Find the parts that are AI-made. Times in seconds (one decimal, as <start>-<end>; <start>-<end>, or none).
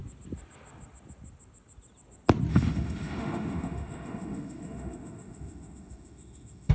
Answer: 2.5-6.7